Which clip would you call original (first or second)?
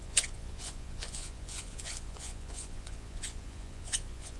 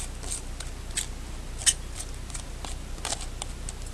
second